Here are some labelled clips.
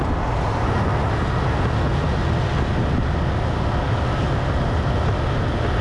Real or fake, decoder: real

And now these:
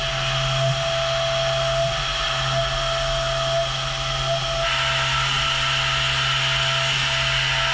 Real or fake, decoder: real